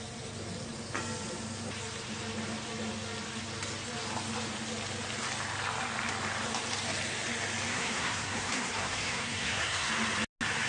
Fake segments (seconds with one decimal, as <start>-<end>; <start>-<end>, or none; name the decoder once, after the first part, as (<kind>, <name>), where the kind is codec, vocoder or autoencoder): 7.7-9.9 (codec, SNAC)